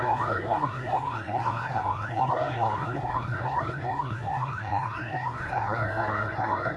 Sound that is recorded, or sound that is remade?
remade